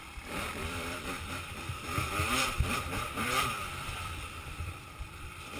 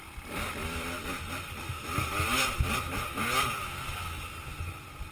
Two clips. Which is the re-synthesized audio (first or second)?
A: first